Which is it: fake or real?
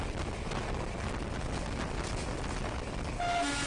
real